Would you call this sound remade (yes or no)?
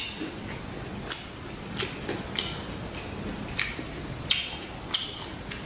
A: no